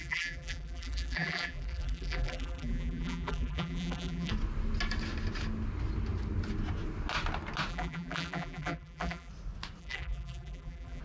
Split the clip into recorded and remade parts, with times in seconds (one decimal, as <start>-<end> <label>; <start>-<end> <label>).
0.0-4.3 remade; 4.3-7.7 recorded; 7.7-9.3 remade; 9.3-9.8 recorded; 9.8-11.0 remade